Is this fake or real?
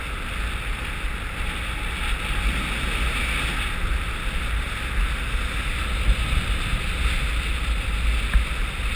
real